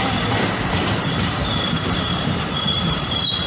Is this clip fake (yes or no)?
yes